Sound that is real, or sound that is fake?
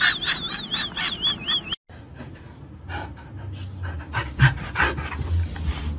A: real